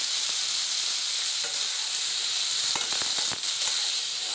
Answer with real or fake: real